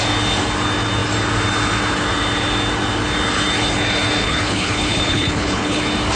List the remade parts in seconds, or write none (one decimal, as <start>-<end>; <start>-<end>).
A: 4.2-5.8